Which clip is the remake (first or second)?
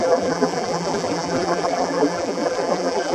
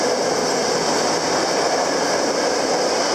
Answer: first